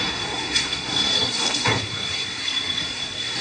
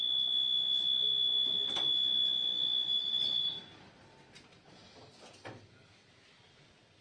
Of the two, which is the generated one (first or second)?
first